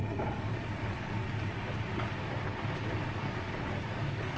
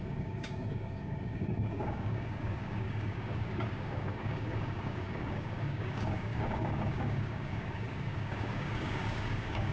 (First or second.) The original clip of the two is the first